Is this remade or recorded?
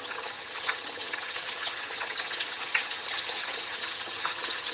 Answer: remade